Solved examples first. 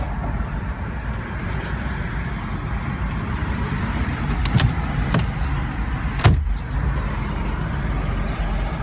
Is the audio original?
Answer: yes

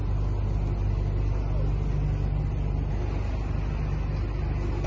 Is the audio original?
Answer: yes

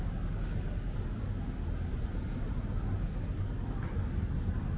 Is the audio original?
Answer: yes